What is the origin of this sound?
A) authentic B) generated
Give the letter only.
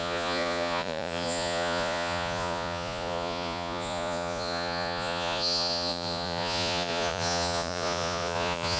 B